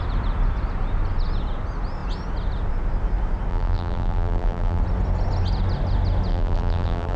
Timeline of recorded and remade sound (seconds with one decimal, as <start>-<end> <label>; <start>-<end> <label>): 0.0-3.5 recorded; 3.5-4.8 remade; 4.8-6.3 recorded; 6.3-7.2 remade